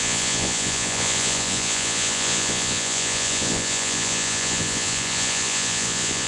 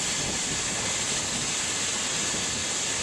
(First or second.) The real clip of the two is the second